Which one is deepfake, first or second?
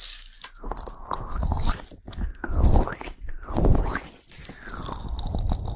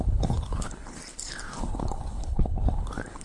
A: second